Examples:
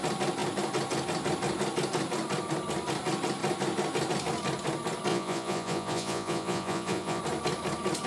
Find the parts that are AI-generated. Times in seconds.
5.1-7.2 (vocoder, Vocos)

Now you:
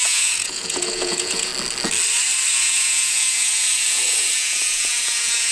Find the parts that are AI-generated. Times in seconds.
0.0-1.5 (vocoder, Vocos); 2.5-5.5

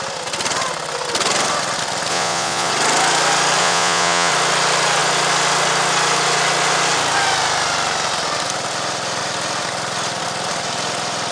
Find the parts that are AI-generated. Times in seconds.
2.1-2.7 (vocoder, Vocos); 3.6-4.3

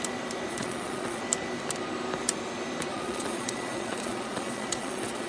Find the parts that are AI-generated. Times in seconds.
0.5-1.2 (vocoder, Vocos); 2.9-5.3

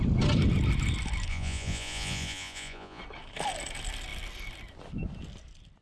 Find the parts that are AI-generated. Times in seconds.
1.3-3.0 (vocoder, Vocos)

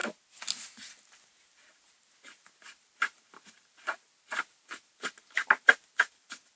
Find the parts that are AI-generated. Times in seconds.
none

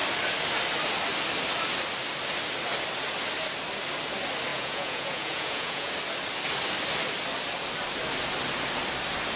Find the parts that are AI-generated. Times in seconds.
4.5-5.9 (vocoder, Vocos)

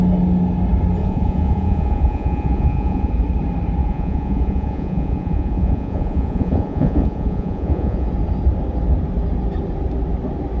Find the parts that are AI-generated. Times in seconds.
1.0-3.1 (vocoder, Vocos); 3.8-8.1